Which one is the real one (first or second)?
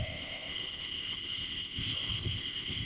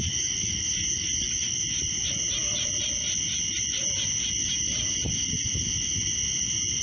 second